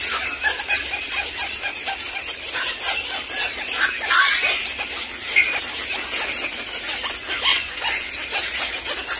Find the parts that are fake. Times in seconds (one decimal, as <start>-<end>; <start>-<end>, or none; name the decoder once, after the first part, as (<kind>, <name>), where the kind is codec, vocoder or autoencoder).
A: 7.5-8.1 (vocoder, Vocos)